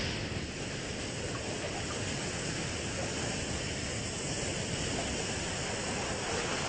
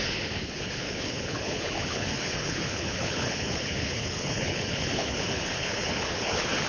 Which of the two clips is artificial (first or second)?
second